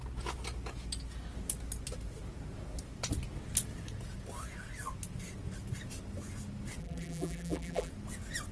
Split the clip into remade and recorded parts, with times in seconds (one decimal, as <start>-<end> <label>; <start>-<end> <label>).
0.0-6.8 recorded; 6.8-7.9 remade; 7.9-8.5 recorded